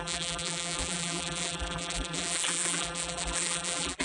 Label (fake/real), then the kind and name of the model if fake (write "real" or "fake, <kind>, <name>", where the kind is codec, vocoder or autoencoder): fake, vocoder, BigVGAN v2